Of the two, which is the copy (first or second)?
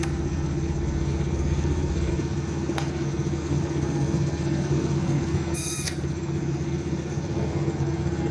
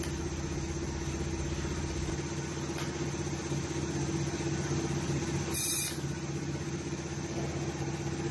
first